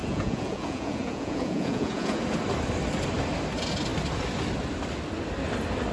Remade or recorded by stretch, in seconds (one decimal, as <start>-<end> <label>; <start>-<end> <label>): 0.0-2.2 remade; 2.2-5.9 recorded